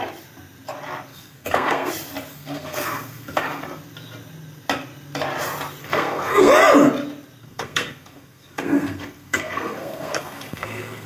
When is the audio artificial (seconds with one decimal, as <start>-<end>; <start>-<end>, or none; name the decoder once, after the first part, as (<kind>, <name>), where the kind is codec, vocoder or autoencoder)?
1.1-1.9 (codec, SNAC); 2.3-3.8; 5.8-6.5; 7.4-11.1